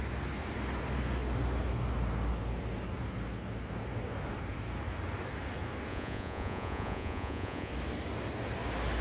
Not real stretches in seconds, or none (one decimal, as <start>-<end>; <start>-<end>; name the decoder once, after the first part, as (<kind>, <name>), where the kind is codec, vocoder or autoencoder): 5.9-7.7 (vocoder, Vocos)